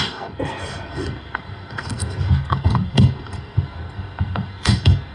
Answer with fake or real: fake